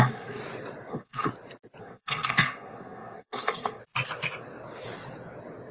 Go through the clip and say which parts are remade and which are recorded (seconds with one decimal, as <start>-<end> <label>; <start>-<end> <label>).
0.0-0.4 remade; 0.4-0.9 recorded; 0.9-1.3 remade; 1.3-1.8 recorded; 1.8-3.8 remade; 3.8-5.7 recorded